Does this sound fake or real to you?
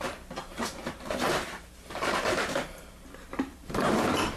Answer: fake